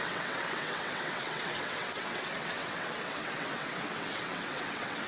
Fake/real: fake